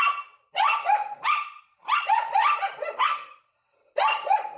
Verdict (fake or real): real